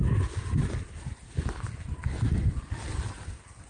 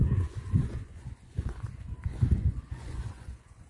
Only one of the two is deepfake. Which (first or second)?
second